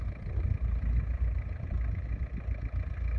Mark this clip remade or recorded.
recorded